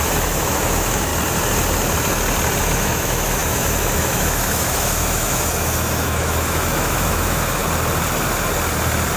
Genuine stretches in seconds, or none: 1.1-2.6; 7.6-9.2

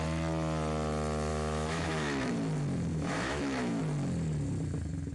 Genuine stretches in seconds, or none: 0.0-1.3; 2.3-2.9; 3.8-5.1

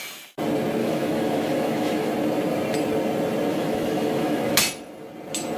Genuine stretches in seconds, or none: 0.0-0.8; 2.1-3.5; 4.6-5.6